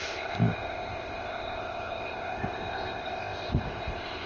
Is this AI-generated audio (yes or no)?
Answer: yes